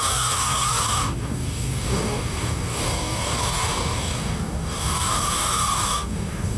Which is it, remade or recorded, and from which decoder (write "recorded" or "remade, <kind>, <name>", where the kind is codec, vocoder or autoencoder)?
remade, codec, DAC